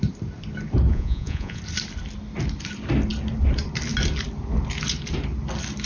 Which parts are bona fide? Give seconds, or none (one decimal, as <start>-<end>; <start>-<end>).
0.0-0.9; 1.6-5.9